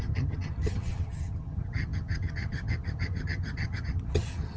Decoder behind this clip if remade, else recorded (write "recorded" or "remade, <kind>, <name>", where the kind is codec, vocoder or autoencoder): remade, vocoder, HiFi-GAN